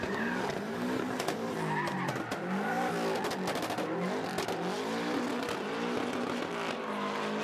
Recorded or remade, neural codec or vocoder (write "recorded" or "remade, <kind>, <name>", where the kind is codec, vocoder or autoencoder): recorded